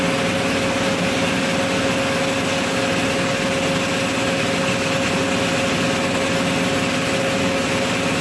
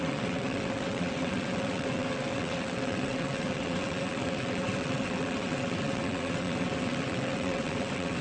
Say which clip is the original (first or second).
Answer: first